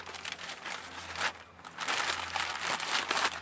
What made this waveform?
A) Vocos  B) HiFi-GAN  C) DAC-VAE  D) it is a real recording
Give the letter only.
D